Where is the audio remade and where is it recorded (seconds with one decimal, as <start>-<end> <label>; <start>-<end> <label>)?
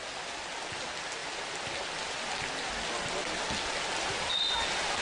0.0-5.0 recorded